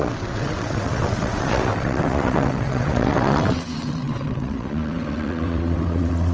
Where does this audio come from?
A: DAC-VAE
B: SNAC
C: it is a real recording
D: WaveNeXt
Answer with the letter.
D